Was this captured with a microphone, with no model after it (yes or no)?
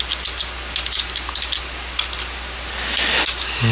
yes